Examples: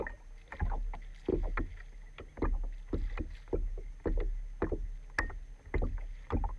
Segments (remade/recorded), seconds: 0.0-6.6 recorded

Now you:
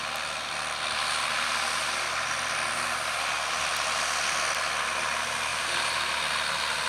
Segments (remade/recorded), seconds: 0.0-5.5 recorded; 5.5-6.2 remade; 6.2-6.9 recorded

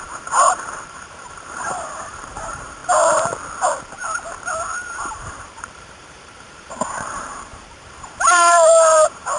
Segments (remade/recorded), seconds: 0.0-2.8 remade; 2.8-4.7 recorded; 4.7-9.4 remade